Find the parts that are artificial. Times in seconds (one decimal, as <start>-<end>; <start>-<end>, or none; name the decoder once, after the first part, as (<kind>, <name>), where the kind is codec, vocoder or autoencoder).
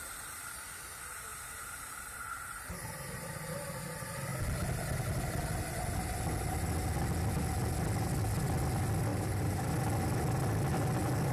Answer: 1.3-3.3 (vocoder, BigVGAN v2); 9.1-9.7